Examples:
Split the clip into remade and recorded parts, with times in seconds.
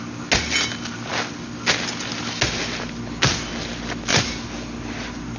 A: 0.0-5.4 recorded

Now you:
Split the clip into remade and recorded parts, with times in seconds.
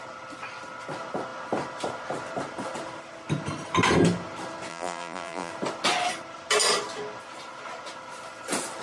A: 0.0-4.7 recorded; 4.7-5.5 remade; 5.5-8.8 recorded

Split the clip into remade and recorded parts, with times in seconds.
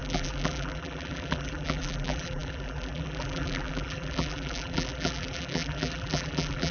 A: 0.0-6.7 remade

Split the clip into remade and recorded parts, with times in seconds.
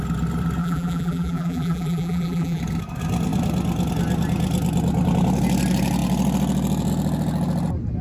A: 0.0-0.6 recorded; 0.6-2.6 remade; 2.6-8.0 recorded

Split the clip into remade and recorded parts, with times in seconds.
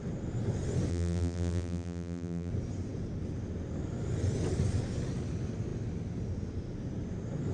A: 0.0-0.9 recorded; 0.9-2.5 remade; 2.5-7.5 recorded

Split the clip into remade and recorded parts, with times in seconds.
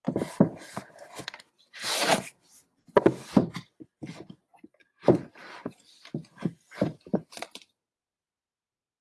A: 0.0-7.1 recorded; 7.1-9.0 remade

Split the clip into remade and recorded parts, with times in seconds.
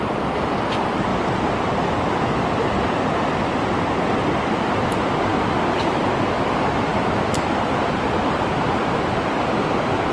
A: 0.0-1.1 recorded; 1.1-2.2 remade; 2.2-5.3 recorded; 5.3-6.3 remade; 6.3-10.1 recorded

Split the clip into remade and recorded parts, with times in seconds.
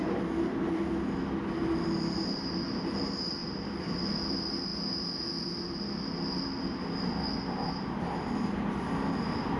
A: 0.0-3.4 recorded; 3.4-4.1 remade; 4.1-9.6 recorded